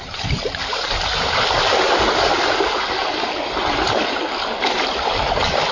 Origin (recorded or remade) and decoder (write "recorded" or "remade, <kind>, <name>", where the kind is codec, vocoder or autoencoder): recorded